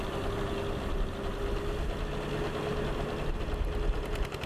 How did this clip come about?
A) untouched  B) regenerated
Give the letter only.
A